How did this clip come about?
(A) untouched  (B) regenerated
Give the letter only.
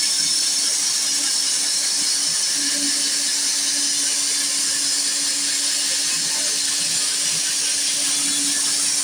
A